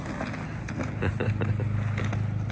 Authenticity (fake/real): real